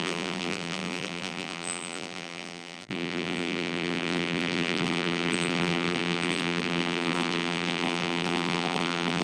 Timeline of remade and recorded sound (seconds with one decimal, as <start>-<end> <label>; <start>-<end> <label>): 0.0-9.2 remade